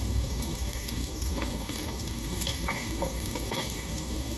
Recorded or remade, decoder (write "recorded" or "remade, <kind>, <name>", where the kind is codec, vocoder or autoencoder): remade, codec, DAC